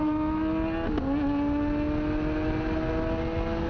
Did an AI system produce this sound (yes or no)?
no